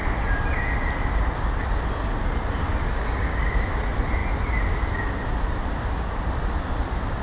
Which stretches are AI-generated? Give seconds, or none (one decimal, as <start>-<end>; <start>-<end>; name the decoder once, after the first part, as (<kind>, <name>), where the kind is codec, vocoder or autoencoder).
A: 2.6-3.8 (codec, DAC)